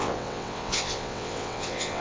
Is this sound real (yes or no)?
no